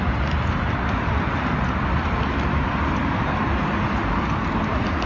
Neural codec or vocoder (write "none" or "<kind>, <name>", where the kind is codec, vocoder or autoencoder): none